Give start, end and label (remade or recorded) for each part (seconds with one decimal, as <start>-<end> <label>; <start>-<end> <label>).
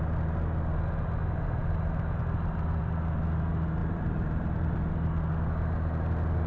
0.0-3.8 recorded; 3.8-5.3 remade; 5.3-6.5 recorded